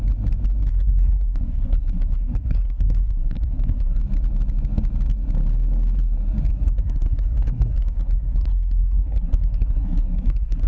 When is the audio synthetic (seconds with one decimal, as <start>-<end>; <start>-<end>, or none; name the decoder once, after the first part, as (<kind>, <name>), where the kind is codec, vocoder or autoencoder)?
0.7-4.0 (codec, SNAC); 6.5-10.7